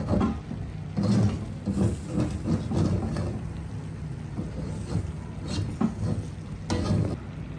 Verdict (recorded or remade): recorded